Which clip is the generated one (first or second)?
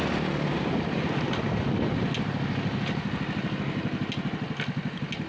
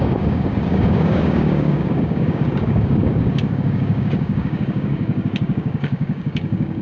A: second